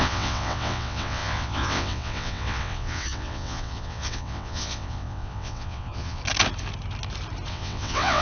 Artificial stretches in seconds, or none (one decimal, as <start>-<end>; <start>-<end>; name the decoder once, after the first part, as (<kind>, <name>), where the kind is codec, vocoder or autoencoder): 0.0-6.2 (vocoder, WaveNeXt); 7.5-8.2

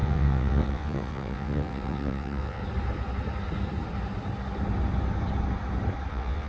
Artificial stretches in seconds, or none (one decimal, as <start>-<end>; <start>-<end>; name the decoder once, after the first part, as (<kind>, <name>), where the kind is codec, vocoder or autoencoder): 0.0-2.6 (vocoder, WaveNeXt); 6.1-6.5

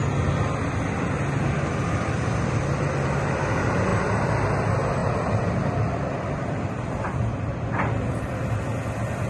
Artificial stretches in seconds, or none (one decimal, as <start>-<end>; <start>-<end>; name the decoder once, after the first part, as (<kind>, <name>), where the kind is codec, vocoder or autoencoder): 3.9-4.5 (vocoder, BigVGAN v2); 5.0-8.5

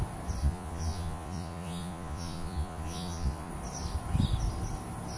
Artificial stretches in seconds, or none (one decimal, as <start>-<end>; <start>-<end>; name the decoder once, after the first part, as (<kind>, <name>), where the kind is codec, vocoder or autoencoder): 0.4-3.5 (vocoder, Vocos)

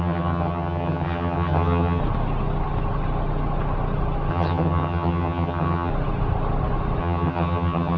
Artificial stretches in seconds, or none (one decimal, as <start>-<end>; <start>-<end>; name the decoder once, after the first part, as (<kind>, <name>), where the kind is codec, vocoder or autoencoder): 0.0-2.0 (vocoder, HiFi-GAN); 4.3-5.9; 7.0-8.0

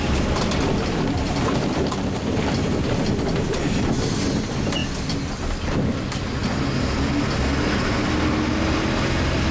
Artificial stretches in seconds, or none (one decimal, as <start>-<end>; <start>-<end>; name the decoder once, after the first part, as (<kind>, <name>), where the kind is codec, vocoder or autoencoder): none

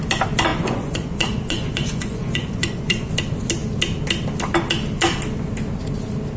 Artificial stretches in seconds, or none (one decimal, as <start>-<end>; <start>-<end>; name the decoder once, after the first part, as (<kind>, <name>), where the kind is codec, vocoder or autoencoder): 0.5-3.1 (vocoder, Vocos)